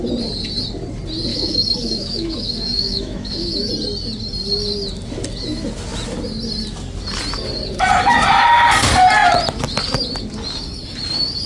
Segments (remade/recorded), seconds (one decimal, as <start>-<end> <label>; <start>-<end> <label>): 0.0-1.3 recorded; 1.3-3.7 remade; 3.7-11.5 recorded